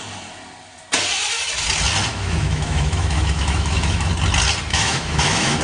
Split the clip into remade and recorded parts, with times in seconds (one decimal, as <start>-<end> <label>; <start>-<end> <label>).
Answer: 0.0-2.1 recorded; 2.1-4.1 remade; 4.1-4.7 recorded; 4.7-5.6 remade